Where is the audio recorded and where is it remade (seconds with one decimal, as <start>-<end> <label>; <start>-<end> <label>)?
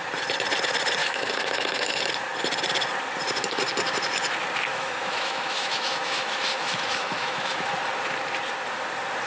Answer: 0.0-1.0 recorded; 1.0-2.0 remade; 2.0-4.7 recorded; 4.7-7.7 remade; 7.7-9.3 recorded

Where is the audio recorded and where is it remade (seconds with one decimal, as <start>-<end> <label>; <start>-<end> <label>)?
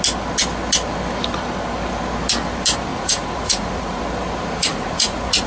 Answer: 0.0-2.9 recorded; 2.9-4.0 remade; 4.0-4.6 recorded; 4.6-5.5 remade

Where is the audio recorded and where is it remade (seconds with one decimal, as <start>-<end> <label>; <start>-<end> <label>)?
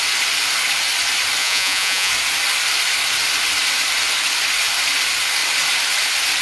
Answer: 0.0-1.4 recorded; 1.4-2.1 remade; 2.1-6.4 recorded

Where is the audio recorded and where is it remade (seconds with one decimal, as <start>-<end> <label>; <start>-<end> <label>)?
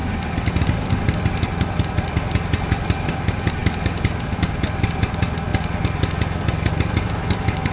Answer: 0.0-3.6 remade; 3.6-4.2 recorded; 4.2-5.5 remade; 5.5-6.7 recorded; 6.7-7.7 remade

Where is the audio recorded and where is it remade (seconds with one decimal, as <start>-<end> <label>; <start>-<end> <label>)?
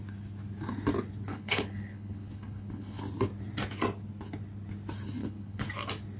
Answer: 0.0-1.3 recorded; 1.3-3.0 remade; 3.0-5.2 recorded; 5.2-5.7 remade; 5.7-6.2 recorded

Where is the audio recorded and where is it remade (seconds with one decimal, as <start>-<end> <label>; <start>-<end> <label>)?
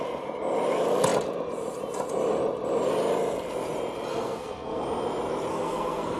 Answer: 0.0-4.1 recorded; 4.1-4.8 remade; 4.8-5.5 recorded; 5.5-6.2 remade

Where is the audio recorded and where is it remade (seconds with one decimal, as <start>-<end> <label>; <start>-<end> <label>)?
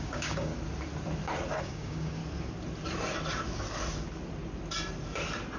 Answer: 0.0-0.5 remade; 0.5-1.6 recorded; 1.6-2.2 remade; 2.2-5.6 recorded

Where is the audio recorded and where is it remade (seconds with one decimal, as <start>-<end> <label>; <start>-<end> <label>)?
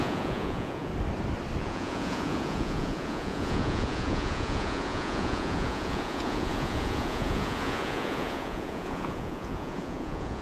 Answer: 0.0-0.9 remade; 0.9-1.6 recorded; 1.6-10.4 remade